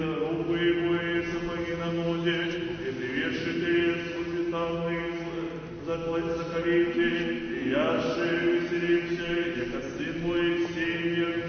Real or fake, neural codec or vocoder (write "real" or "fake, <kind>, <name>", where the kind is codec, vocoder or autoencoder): real